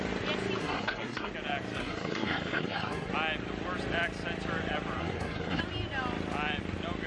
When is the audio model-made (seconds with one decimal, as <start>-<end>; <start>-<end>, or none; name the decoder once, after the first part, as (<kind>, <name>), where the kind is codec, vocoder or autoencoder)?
0.6-1.3 (codec, SNAC); 1.8-3.1; 5.0-5.6